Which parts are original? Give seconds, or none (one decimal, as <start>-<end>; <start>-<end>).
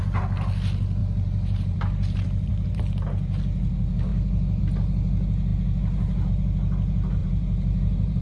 0.0-1.0; 2.8-4.1; 4.6-7.2